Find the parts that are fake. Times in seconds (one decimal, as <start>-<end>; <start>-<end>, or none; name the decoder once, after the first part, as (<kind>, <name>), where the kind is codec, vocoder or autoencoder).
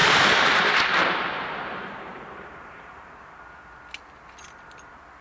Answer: 0.0-3.1 (vocoder, BigVGAN v2)